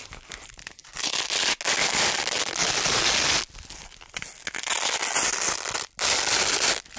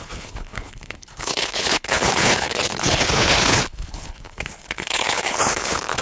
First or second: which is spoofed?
second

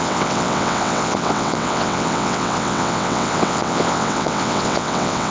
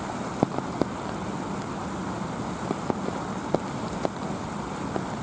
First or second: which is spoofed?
first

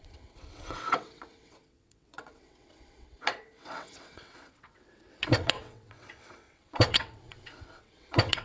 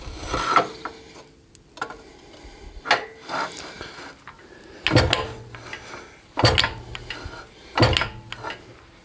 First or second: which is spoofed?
first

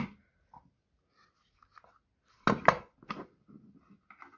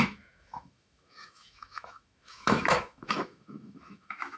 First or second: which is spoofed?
second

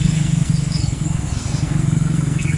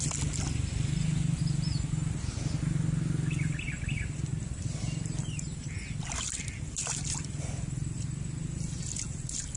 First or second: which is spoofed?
first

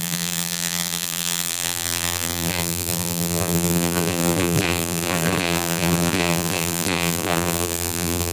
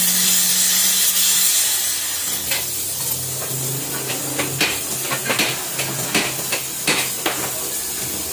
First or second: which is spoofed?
first